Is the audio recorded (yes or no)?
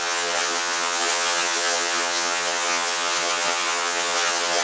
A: no